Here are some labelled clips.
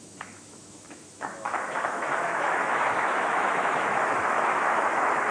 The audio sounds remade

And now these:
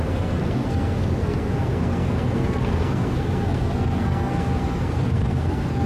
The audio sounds remade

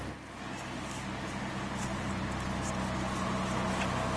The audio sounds recorded